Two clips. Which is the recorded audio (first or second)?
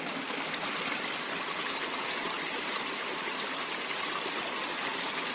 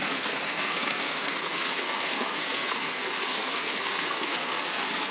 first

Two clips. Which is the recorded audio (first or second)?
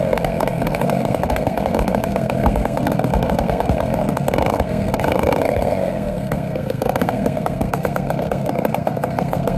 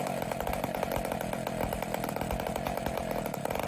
second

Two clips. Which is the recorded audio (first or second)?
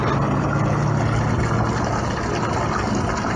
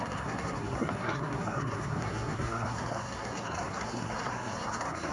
first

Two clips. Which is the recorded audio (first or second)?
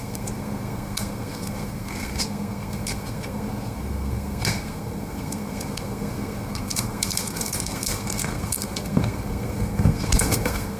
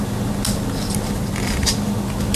second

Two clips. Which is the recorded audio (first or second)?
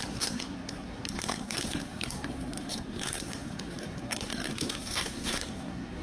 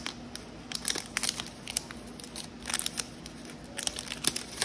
second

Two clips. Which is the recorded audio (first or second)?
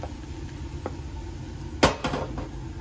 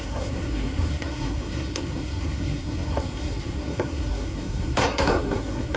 first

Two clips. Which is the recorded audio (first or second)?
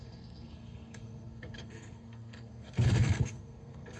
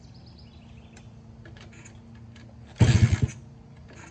second